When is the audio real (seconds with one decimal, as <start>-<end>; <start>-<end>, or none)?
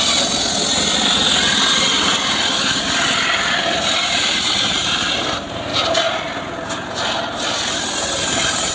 0.0-8.7